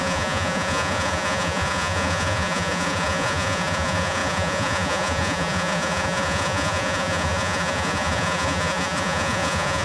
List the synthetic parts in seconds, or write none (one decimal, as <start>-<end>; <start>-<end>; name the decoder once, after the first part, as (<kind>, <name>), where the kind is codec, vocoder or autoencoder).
0.0-9.8 (vocoder, Vocos)